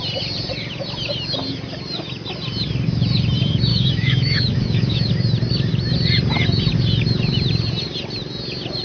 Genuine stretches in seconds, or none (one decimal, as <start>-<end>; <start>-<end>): 0.0-3.7; 5.1-8.8